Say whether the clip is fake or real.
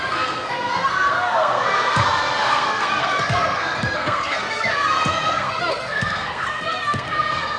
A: fake